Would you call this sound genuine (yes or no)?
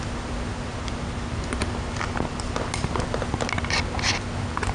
yes